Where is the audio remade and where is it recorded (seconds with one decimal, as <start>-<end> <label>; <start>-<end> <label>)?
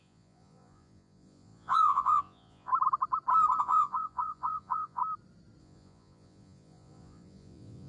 0.0-2.7 remade; 2.7-3.6 recorded; 3.6-5.0 remade; 5.0-5.6 recorded; 5.6-7.9 remade